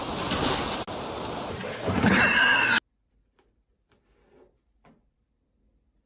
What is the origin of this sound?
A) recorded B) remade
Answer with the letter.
A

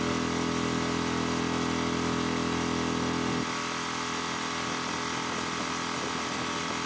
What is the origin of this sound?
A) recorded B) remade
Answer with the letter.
A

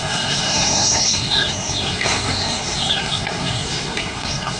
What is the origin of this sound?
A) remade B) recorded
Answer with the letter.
A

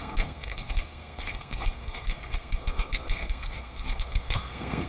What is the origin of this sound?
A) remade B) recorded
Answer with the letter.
A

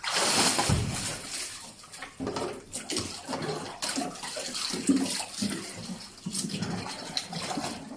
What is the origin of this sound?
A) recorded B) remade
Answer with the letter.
A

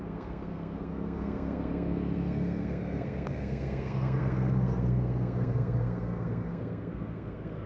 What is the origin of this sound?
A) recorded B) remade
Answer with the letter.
B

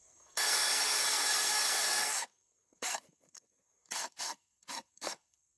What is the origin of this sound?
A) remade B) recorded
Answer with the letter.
A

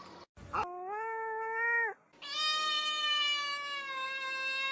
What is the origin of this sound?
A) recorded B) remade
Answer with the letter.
A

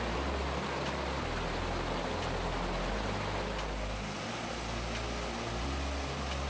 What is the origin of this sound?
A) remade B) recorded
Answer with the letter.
B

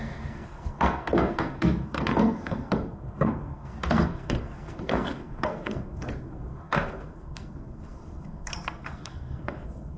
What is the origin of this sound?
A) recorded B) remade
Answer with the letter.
B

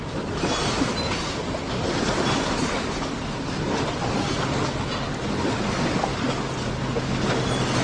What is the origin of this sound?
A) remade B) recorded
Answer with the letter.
B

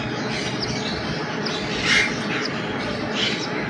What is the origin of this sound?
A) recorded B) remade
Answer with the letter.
A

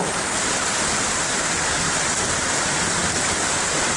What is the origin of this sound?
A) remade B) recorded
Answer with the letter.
B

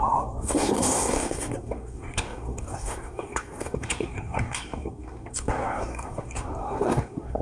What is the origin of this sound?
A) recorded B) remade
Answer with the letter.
B